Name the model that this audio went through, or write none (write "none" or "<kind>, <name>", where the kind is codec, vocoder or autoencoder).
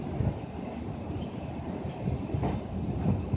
none